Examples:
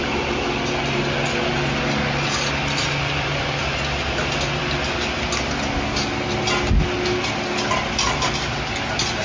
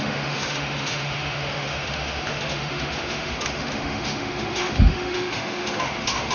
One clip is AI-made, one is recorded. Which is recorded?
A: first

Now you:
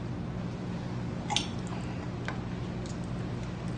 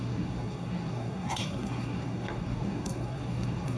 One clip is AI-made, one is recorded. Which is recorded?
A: first